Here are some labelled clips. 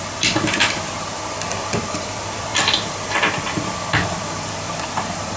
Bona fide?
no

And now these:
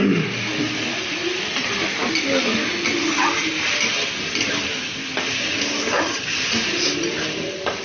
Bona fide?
no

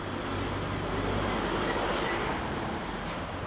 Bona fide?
yes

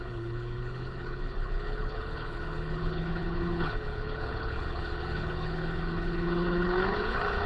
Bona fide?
no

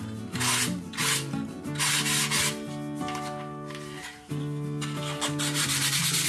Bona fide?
yes